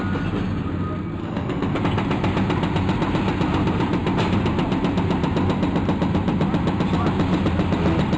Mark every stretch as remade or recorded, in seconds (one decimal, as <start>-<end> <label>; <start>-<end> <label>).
0.0-1.2 recorded; 1.2-1.8 remade; 1.8-8.2 recorded